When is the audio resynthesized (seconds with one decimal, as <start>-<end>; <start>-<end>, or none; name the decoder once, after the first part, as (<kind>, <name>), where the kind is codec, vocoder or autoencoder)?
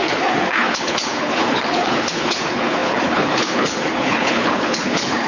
0.0-5.3 (codec, HILCodec)